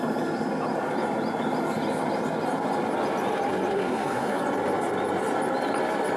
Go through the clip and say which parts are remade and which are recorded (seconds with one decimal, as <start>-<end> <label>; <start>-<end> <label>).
0.0-3.7 recorded; 3.7-4.4 remade; 4.4-6.2 recorded